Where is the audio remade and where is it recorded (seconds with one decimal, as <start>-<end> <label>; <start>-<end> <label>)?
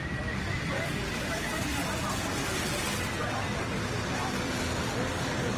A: 0.0-1.7 remade; 1.7-5.1 recorded; 5.1-5.6 remade